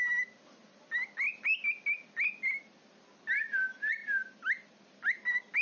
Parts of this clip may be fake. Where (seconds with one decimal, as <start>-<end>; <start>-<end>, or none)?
none